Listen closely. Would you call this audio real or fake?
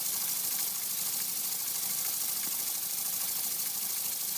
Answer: real